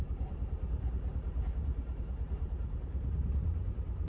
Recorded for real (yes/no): no